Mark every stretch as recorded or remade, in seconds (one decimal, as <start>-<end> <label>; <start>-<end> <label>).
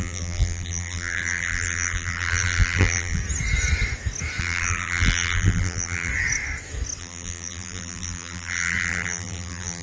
0.0-3.2 remade; 3.2-4.4 recorded; 4.4-6.1 remade; 6.1-7.0 recorded; 7.0-9.8 remade